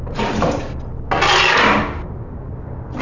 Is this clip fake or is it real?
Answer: real